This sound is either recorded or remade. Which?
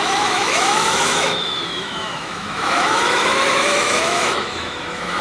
remade